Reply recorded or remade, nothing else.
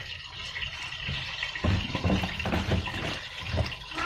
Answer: recorded